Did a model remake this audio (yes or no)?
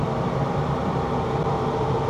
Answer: yes